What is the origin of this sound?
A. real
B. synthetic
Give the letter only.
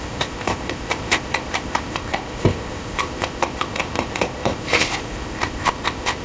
B